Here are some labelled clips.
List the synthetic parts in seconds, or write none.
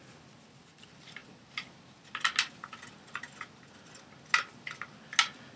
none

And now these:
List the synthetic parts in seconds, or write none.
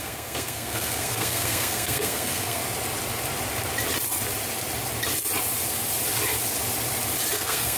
0.0-2.6 (codec, SNAC); 7.3-7.8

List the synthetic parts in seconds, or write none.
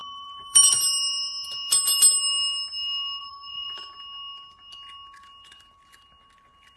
0.0-0.7 (vocoder, BigVGAN v2); 3.2-4.0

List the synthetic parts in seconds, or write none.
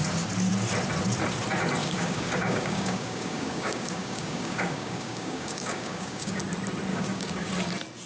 1.8-6.4 (codec, DAC); 6.9-7.5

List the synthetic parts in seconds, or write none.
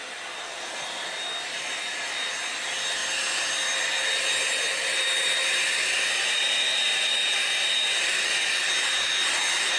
none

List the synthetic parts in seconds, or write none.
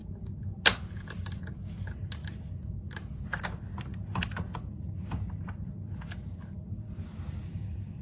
none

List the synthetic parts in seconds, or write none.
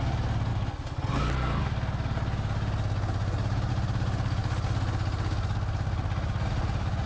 none